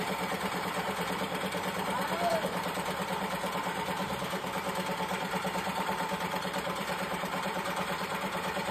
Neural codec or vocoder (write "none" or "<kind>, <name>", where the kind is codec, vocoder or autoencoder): vocoder, BigVGAN v2